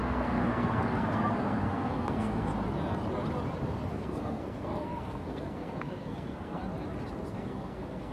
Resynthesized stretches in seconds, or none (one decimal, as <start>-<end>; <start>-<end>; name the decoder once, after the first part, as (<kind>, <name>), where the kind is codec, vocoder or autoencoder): 0.0-2.5 (codec, SNAC); 3.9-6.6; 7.3-8.1